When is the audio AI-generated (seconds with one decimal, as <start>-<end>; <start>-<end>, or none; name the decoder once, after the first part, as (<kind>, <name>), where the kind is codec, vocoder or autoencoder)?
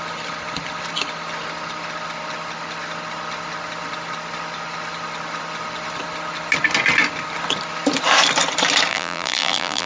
8.9-9.9 (vocoder, BigVGAN v2)